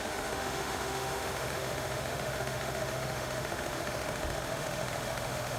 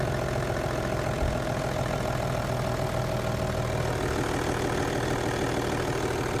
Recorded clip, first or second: second